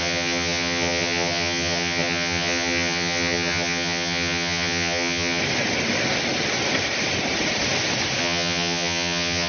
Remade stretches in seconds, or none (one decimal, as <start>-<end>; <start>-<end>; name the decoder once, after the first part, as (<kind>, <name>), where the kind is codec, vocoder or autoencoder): 0.0-5.4 (vocoder, HiFi-GAN); 8.2-9.5